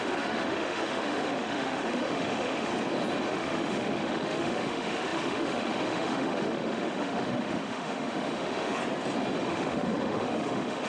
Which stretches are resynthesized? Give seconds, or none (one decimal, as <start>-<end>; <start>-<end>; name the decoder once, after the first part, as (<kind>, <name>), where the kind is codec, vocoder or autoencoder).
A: 0.0-2.7 (autoencoder, DAC-VAE); 3.3-8.8; 9.5-10.9